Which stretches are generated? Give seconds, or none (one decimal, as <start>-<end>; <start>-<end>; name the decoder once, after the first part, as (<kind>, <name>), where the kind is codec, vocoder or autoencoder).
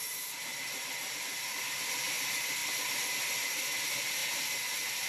none